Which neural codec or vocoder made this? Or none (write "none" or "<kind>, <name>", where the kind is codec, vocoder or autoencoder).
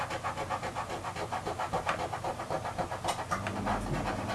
none